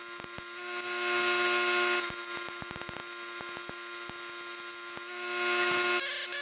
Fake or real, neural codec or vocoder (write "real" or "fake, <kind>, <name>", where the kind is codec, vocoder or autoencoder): real